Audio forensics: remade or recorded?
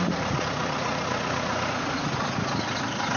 remade